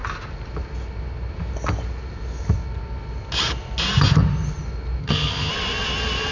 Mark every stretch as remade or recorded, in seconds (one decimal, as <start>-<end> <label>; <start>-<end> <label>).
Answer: 0.0-5.0 recorded; 5.0-5.5 remade; 5.5-6.3 recorded